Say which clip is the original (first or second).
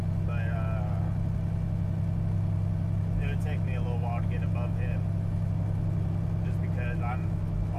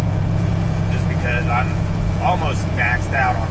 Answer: first